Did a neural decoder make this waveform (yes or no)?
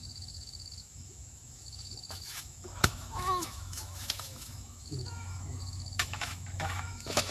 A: yes